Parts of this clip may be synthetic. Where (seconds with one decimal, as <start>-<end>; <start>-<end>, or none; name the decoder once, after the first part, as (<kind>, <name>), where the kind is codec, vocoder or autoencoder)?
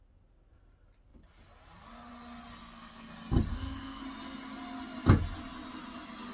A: 2.6-3.1 (codec, SNAC); 3.5-4.0